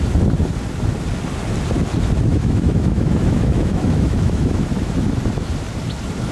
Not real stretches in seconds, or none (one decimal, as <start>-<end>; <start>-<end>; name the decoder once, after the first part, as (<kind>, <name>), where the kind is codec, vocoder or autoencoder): 2.3-4.9 (autoencoder, DAC-VAE)